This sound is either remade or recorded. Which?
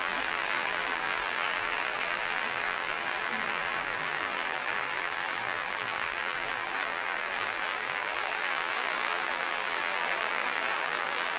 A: remade